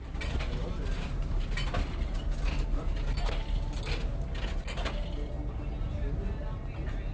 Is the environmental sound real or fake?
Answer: real